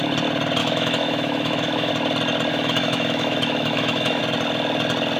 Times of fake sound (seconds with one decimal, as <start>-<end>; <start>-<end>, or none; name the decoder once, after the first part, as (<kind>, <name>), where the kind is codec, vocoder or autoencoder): 0.6-1.9 (autoencoder, DAC-VAE); 2.5-4.2